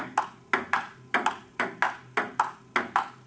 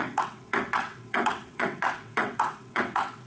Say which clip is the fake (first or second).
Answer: second